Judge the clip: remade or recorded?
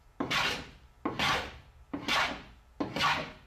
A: recorded